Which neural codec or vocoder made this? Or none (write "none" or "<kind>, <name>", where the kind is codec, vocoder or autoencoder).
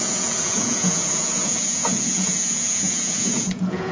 vocoder, Vocos